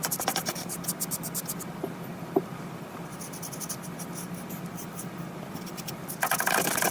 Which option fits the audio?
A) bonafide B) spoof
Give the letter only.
A